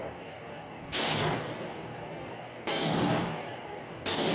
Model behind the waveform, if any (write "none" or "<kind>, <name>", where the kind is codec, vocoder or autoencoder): codec, DAC